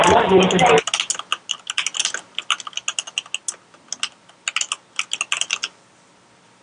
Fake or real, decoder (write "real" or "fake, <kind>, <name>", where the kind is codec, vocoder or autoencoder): real